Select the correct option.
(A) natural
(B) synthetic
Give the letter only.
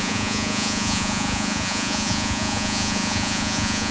B